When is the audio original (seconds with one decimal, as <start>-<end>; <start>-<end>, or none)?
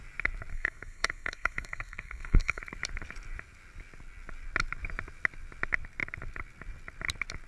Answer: 0.0-0.5; 2.6-7.5